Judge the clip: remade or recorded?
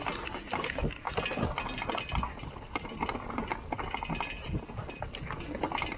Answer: recorded